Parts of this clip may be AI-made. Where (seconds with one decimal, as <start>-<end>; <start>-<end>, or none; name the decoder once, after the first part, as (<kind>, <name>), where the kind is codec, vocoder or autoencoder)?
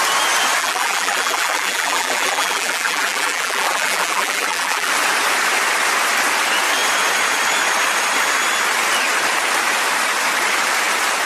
0.6-4.9 (vocoder, BigVGAN v2)